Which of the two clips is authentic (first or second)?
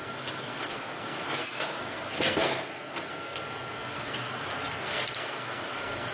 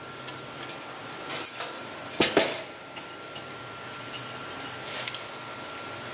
second